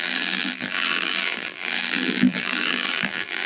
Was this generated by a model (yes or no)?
yes